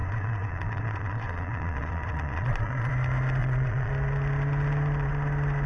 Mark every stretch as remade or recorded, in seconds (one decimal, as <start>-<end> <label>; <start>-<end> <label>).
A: 0.0-2.9 remade; 2.9-3.4 recorded; 3.4-3.9 remade; 3.9-5.7 recorded